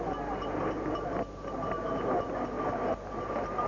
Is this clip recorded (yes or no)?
yes